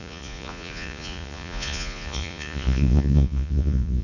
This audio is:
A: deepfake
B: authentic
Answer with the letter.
A